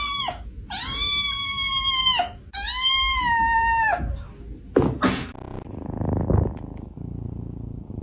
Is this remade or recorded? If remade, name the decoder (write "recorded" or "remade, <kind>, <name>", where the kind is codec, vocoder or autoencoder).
recorded